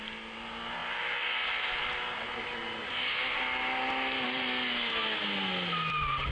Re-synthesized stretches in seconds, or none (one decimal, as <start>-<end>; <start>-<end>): none